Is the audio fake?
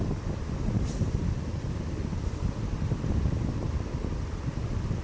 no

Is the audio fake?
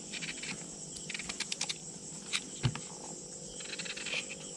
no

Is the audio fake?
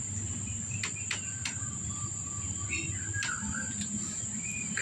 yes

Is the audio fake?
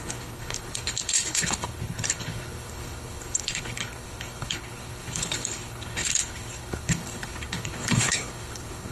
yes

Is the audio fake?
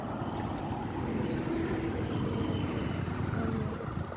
no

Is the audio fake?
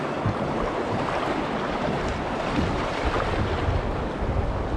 no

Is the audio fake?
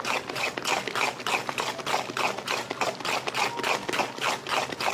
no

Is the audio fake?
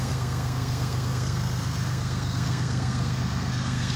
yes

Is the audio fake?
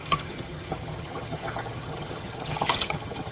yes